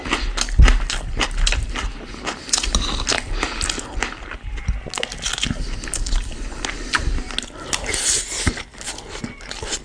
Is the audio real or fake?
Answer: real